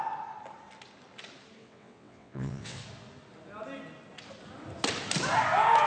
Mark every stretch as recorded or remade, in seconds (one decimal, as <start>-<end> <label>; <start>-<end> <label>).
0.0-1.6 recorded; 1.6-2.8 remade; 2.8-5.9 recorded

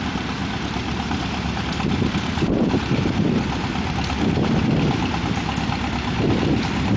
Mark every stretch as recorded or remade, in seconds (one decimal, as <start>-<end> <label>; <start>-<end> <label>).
0.0-0.4 recorded; 0.4-2.7 remade; 2.7-7.0 recorded

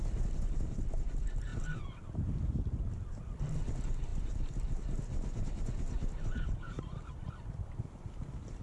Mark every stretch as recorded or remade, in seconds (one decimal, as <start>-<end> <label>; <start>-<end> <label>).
0.0-8.6 recorded